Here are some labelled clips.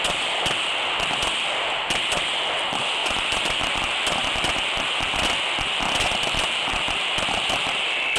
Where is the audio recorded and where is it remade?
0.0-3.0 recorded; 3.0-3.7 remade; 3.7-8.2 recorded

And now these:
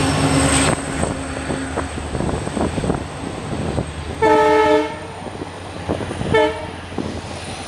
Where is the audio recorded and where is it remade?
0.0-7.7 recorded

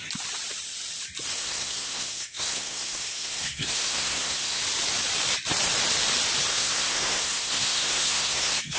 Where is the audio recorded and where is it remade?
0.0-1.3 recorded; 1.3-4.6 remade; 4.6-6.5 recorded; 6.5-8.8 remade

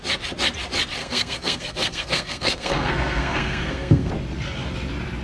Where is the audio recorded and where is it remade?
0.0-1.0 recorded; 1.0-4.1 remade; 4.1-5.2 recorded

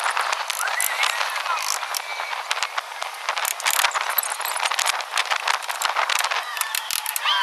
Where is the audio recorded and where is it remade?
0.0-7.4 recorded

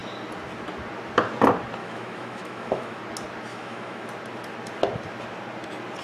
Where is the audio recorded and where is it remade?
0.0-1.8 recorded; 1.8-3.0 remade; 3.0-3.5 recorded; 3.5-4.1 remade; 4.1-6.0 recorded

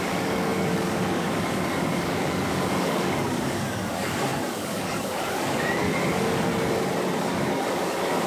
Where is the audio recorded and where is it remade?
0.0-6.5 remade; 6.5-7.2 recorded; 7.2-8.3 remade